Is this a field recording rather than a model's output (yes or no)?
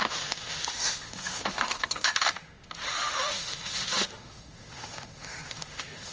no